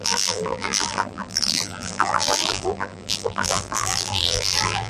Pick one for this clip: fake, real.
fake